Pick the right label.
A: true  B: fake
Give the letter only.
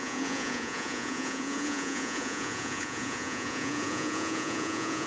B